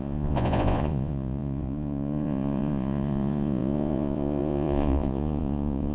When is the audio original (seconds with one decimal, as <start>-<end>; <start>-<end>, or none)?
none